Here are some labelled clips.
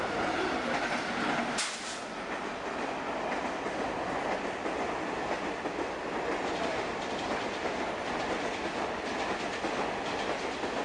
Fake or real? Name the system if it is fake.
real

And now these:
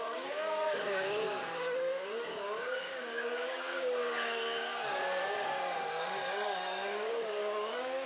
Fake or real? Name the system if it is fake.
fake, codec, DAC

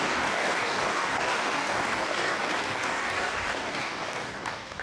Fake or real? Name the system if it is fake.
fake, codec, DAC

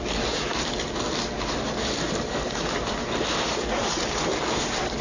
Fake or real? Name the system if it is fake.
real